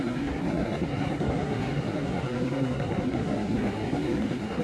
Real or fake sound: fake